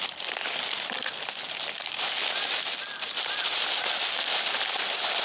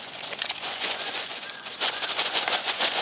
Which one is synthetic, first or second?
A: second